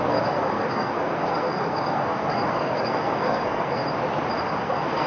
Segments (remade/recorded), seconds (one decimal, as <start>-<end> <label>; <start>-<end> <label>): 0.0-3.8 remade; 3.8-4.6 recorded; 4.6-5.1 remade